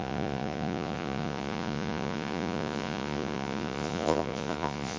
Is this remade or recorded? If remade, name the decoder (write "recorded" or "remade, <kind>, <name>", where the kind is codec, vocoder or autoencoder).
remade, vocoder, Vocos